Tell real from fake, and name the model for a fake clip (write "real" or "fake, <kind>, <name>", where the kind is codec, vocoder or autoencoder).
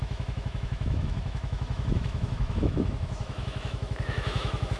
fake, autoencoder, DAC-VAE